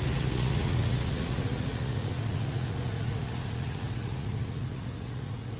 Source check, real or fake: fake